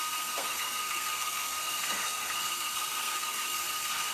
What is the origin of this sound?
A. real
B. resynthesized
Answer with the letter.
B